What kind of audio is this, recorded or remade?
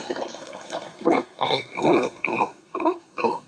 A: remade